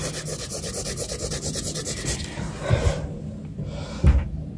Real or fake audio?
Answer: real